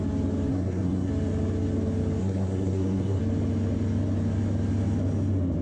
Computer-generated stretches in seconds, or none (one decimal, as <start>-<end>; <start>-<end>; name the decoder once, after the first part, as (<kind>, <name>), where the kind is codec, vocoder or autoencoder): 0.5-1.1 (codec, SNAC); 2.2-3.2